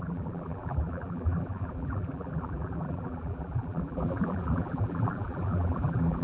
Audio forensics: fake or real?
fake